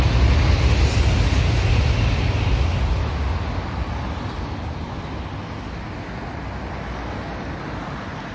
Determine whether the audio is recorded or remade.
recorded